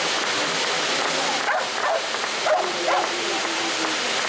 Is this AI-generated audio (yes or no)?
no